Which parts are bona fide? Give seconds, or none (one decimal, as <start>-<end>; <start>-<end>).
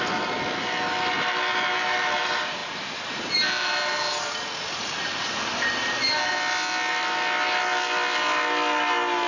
0.0-9.3